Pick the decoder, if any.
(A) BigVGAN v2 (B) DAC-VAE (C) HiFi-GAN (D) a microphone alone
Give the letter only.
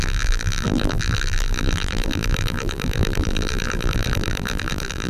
A